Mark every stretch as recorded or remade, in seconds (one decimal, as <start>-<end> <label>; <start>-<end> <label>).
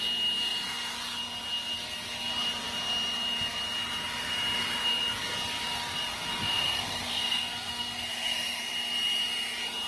0.0-6.3 recorded; 6.3-8.6 remade; 8.6-9.9 recorded